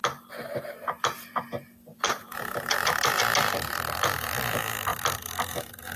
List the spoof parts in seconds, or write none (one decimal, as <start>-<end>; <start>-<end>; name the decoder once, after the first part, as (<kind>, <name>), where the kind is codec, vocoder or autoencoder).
1.9-3.2 (vocoder, BigVGAN v2)

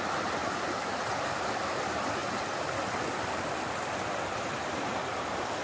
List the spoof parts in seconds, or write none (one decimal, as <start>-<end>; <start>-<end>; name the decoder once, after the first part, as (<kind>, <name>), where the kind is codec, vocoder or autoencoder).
0.4-1.0 (vocoder, BigVGAN v2)

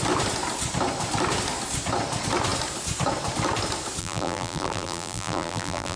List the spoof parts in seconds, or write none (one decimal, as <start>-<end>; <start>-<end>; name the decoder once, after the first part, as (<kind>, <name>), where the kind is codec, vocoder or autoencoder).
4.0-6.0 (vocoder, BigVGAN v2)

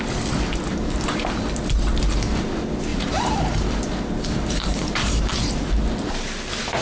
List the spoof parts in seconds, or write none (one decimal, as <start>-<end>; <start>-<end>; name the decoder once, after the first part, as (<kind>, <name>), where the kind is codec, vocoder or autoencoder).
0.7-1.4 (vocoder, BigVGAN v2); 2.9-5.8